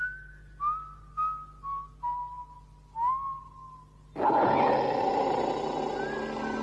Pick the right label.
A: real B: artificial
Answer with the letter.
A